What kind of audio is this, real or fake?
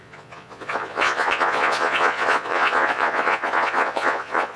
fake